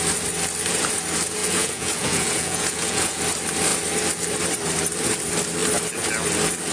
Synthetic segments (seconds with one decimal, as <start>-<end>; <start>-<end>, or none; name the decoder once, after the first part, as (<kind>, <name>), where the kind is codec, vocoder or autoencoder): 1.4-3.2 (vocoder, Vocos)